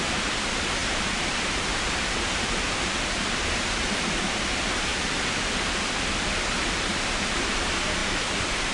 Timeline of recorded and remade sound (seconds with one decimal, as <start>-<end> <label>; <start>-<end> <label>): 0.0-4.9 remade; 4.9-6.9 recorded; 6.9-8.7 remade

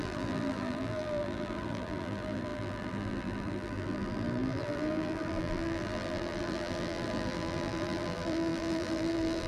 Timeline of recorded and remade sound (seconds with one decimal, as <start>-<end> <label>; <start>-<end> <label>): 0.0-9.5 remade

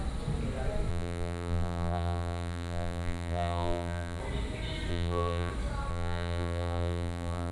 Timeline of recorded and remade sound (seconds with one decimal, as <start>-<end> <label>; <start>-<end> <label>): 0.0-0.9 recorded; 0.9-4.2 remade; 4.2-4.9 recorded; 4.9-5.5 remade; 5.5-5.9 recorded; 5.9-7.5 remade

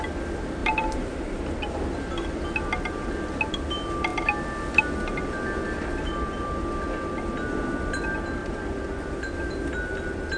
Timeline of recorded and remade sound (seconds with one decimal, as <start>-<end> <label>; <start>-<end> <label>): 0.0-0.6 recorded; 0.6-1.4 remade; 1.4-8.4 recorded; 8.4-9.7 remade; 9.7-10.4 recorded